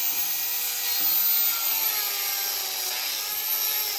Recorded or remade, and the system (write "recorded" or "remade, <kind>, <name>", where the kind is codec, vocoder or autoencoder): recorded